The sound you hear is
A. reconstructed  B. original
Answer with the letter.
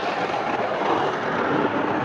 B